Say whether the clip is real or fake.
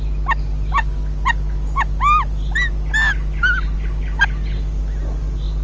real